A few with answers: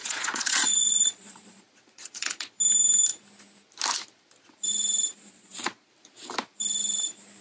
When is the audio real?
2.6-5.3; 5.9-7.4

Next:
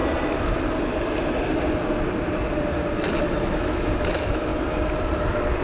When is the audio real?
0.0-3.4; 4.5-5.6

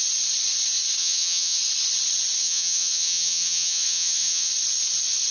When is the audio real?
0.0-1.0; 1.6-2.4; 4.5-5.3

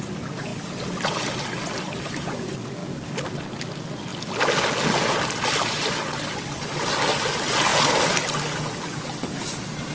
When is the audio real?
0.0-9.9

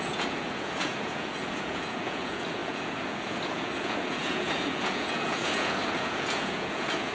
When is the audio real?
none

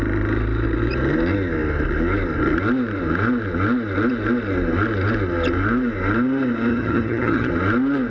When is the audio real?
0.0-6.7; 7.5-8.1

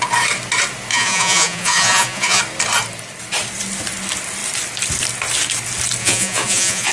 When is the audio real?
0.0-0.9; 2.4-6.0